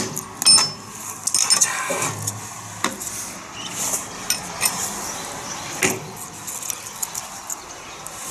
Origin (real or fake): real